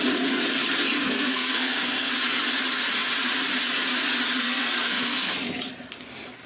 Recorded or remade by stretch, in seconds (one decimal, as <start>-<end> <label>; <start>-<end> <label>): 0.0-1.0 recorded; 1.0-2.1 remade; 2.1-4.4 recorded; 4.4-5.3 remade; 5.3-6.5 recorded